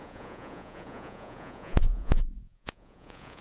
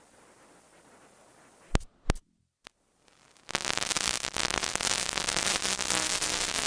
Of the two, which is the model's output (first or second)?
first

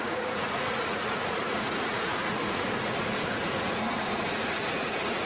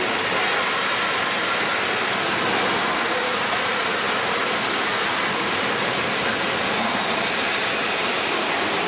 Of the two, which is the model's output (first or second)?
first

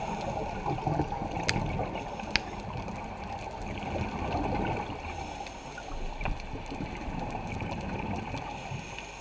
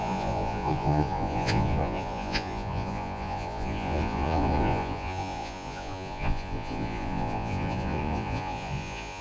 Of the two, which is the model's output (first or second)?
second